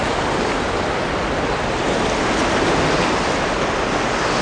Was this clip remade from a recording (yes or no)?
no